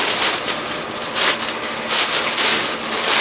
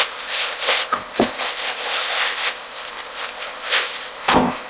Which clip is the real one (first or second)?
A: first